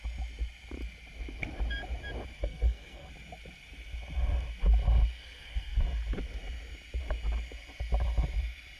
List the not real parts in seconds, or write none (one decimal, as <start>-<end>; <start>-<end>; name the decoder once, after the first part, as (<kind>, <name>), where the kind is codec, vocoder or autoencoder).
2.4-3.1 (codec, SNAC); 5.2-5.8